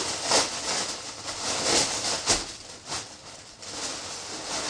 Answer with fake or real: real